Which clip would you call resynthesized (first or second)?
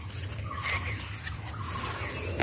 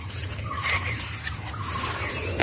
second